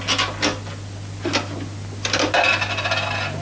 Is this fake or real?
real